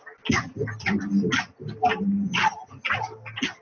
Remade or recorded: recorded